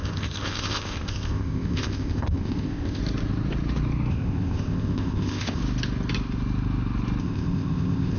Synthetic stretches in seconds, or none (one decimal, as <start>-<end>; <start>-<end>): 0.0-3.0; 4.1-5.6; 7.2-8.2